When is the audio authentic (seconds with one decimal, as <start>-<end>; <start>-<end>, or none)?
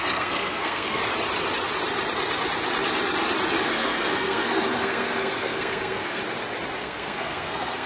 1.0-3.6; 6.2-6.8